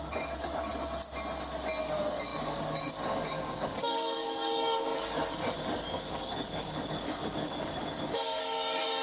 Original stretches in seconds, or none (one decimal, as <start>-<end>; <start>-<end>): 0.7-1.8